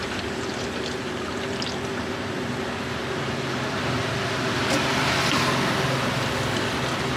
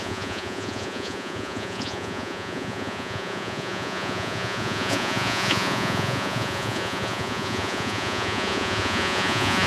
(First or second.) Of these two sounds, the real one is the first